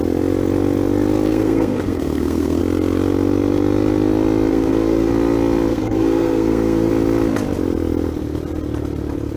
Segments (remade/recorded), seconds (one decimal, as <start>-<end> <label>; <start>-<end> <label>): 0.0-1.3 recorded; 1.3-2.6 remade; 2.6-4.5 recorded; 4.5-5.1 remade; 5.1-5.7 recorded; 5.7-6.9 remade; 6.9-9.4 recorded